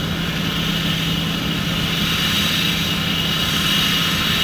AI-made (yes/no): no